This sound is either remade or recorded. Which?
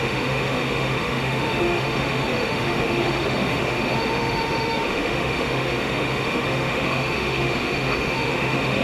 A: remade